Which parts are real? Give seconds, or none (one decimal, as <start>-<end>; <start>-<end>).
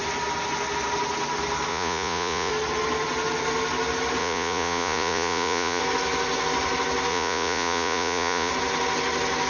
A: 0.0-1.7; 2.5-4.2; 5.8-7.1; 8.5-9.5